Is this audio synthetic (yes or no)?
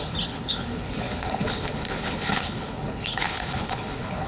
yes